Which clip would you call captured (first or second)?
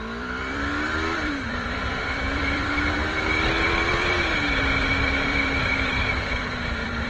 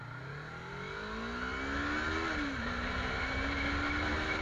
second